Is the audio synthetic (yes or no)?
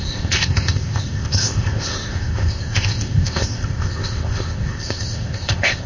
yes